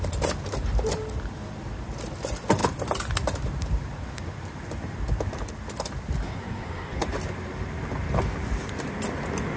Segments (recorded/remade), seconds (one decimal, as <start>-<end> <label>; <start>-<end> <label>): 0.0-6.2 recorded; 6.2-7.0 remade; 7.0-9.6 recorded